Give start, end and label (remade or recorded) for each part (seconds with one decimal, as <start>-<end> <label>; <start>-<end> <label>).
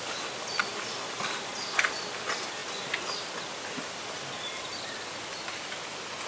0.0-6.3 recorded